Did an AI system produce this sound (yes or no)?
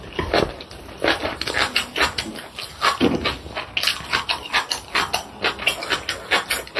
no